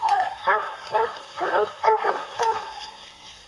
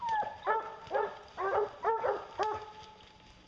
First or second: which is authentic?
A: second